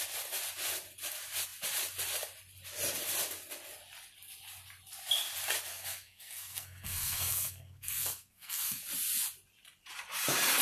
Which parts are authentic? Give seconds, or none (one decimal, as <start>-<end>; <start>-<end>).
0.0-5.7; 8.8-10.6